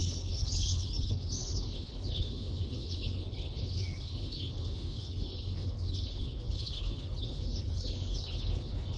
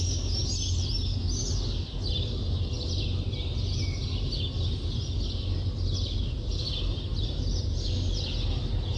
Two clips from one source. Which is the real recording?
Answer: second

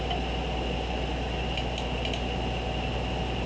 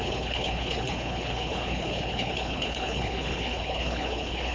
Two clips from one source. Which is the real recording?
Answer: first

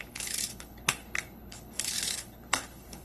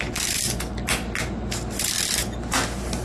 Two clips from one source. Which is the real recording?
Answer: second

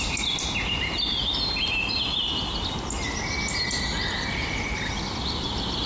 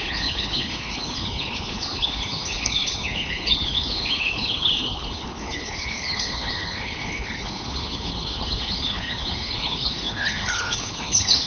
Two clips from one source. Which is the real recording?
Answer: first